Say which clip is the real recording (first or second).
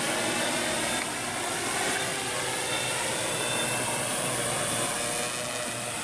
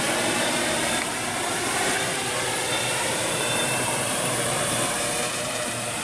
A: first